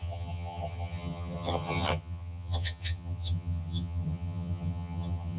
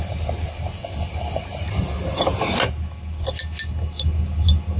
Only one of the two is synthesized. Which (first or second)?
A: first